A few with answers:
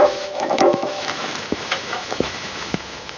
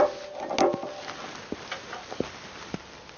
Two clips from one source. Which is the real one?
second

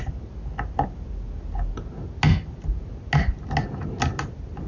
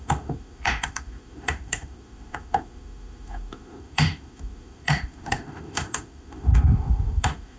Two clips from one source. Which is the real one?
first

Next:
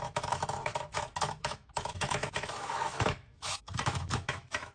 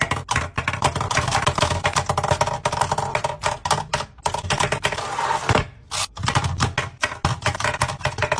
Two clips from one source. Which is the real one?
second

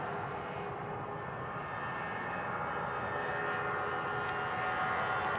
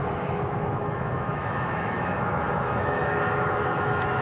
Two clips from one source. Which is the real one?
first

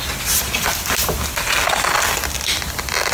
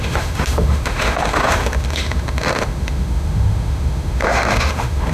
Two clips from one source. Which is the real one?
first